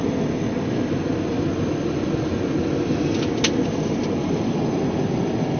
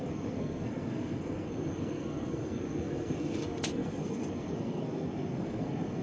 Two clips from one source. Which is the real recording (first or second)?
first